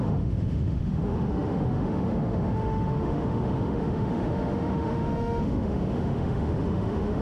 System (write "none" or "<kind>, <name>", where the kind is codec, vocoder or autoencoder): autoencoder, DAC-VAE